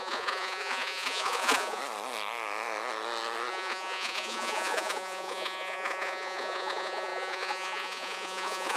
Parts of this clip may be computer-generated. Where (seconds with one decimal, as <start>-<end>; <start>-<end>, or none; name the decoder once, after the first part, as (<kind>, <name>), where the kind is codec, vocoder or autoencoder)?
0.0-1.8 (vocoder, Vocos); 3.5-8.8